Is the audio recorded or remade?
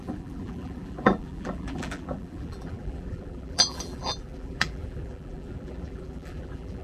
remade